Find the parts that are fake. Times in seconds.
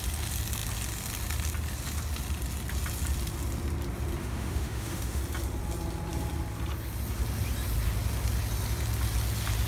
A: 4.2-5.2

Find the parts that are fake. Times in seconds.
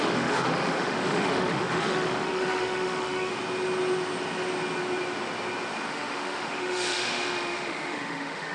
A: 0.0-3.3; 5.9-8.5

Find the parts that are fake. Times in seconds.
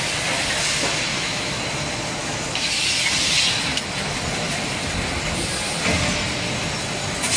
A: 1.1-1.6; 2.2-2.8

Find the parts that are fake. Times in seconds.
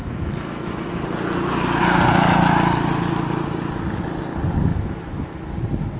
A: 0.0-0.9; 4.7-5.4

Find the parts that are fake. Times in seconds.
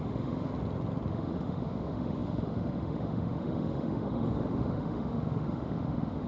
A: 0.0-0.5; 1.1-6.3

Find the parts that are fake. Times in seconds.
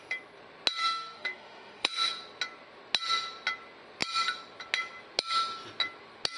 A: 0.8-2.1